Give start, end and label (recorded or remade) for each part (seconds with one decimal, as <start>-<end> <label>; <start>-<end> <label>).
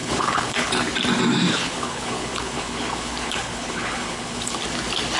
0.0-0.7 remade; 0.7-1.5 recorded; 1.5-4.6 remade; 4.6-5.2 recorded